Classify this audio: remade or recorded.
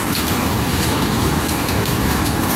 remade